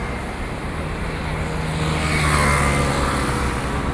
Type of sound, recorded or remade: recorded